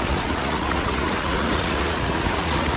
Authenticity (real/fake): fake